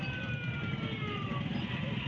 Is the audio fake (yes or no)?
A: no